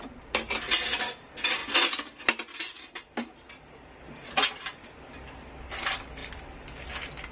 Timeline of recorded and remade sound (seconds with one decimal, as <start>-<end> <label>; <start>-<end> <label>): 0.0-7.3 recorded